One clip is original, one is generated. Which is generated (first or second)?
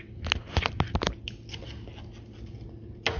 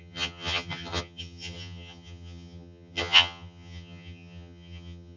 second